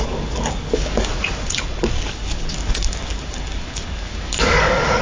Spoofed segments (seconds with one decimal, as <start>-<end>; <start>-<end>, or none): 0.0-1.1; 2.1-5.0